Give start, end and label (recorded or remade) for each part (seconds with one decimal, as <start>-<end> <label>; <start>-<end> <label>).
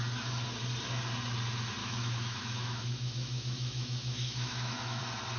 0.0-1.8 recorded; 1.8-5.0 remade; 5.0-5.4 recorded